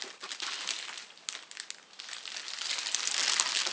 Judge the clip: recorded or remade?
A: recorded